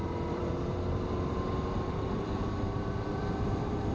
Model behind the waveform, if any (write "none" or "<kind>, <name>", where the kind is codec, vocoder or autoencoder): vocoder, BigVGAN v2